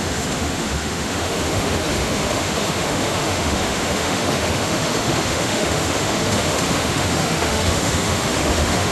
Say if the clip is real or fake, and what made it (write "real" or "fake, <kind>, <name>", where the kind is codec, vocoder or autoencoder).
fake, autoencoder, DAC-VAE